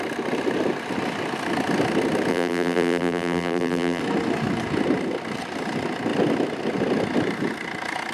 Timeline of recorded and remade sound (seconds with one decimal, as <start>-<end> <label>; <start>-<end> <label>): 0.0-2.3 recorded; 2.3-4.0 remade; 4.0-8.1 recorded

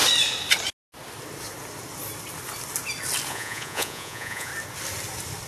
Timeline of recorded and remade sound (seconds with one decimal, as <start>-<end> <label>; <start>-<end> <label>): 0.0-3.3 recorded; 3.3-4.5 remade; 4.5-5.5 recorded